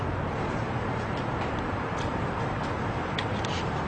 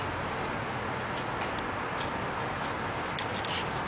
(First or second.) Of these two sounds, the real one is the second